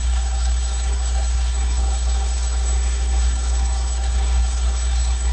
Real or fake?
fake